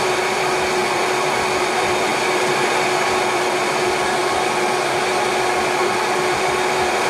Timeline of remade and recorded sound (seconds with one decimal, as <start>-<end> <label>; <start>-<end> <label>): 0.0-7.1 recorded

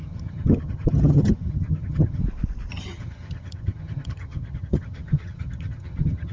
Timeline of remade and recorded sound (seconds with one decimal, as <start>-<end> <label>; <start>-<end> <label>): 0.0-2.2 remade; 2.2-2.7 recorded; 2.7-6.3 remade